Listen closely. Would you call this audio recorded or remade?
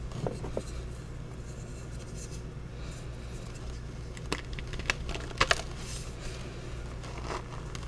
recorded